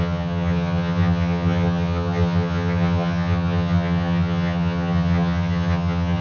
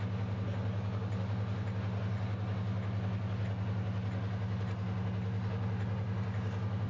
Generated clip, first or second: first